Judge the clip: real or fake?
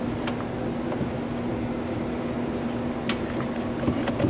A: real